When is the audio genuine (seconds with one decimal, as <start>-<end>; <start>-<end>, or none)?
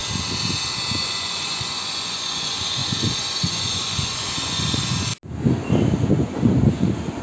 0.0-1.0; 5.1-6.1